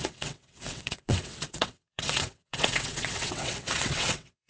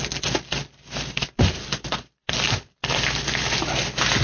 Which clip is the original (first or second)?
second